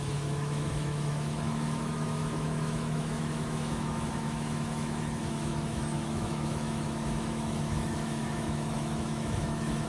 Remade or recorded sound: remade